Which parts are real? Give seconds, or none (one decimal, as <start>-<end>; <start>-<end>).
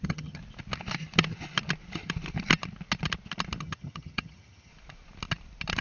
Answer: 0.4-3.6; 4.7-5.8